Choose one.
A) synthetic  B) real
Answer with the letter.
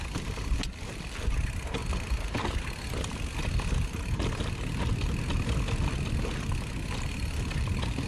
B